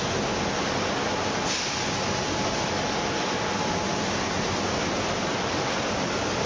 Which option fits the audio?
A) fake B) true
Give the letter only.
B